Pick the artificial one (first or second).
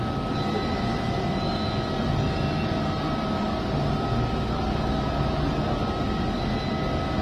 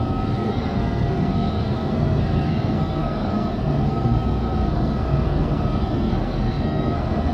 second